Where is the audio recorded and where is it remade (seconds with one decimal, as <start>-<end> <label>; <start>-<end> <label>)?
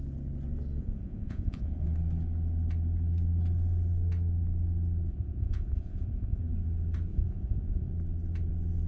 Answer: 0.0-0.8 recorded; 0.8-1.8 remade; 1.8-5.1 recorded; 5.1-6.4 remade; 6.4-7.1 recorded; 7.1-7.9 remade; 7.9-8.9 recorded